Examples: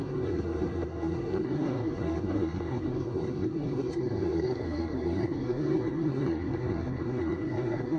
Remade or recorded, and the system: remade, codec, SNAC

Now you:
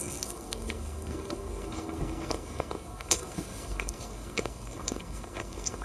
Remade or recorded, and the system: remade, codec, SNAC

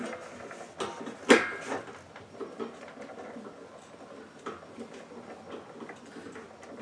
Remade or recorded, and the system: recorded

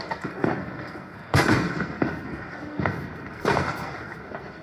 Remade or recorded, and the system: remade, codec, SNAC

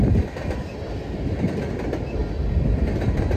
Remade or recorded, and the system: recorded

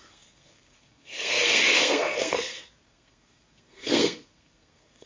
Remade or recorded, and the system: remade, codec, SNAC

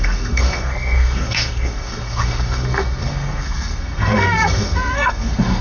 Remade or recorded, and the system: remade, codec, SNAC